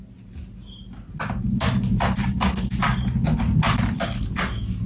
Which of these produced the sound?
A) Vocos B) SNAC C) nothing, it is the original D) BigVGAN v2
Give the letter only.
C